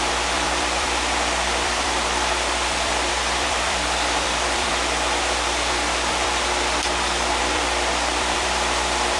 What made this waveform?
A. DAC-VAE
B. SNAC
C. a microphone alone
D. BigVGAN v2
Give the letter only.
D